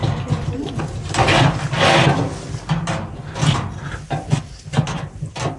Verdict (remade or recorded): recorded